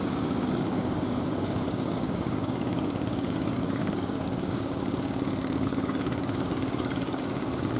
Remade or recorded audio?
remade